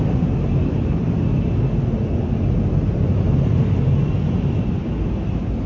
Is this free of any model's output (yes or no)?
yes